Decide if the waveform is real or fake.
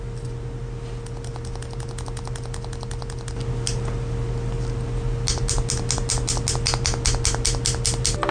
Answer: real